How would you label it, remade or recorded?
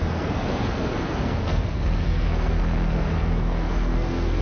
remade